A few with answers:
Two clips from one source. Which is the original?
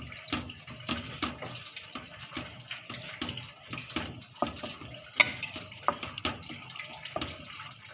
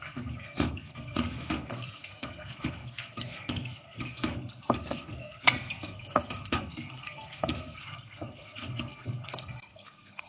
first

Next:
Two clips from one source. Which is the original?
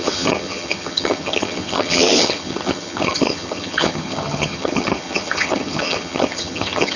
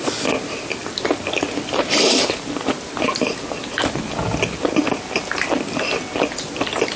second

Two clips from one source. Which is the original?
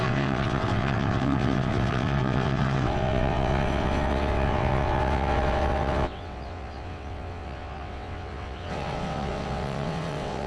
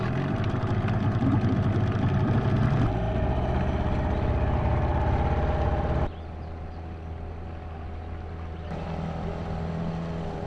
second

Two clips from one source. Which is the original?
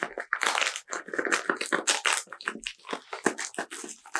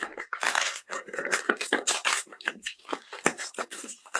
first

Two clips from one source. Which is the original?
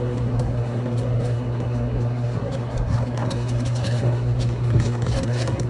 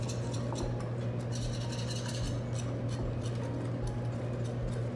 second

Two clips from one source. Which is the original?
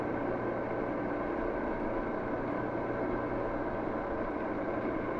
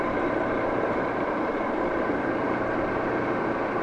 first